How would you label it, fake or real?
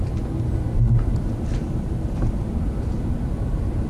real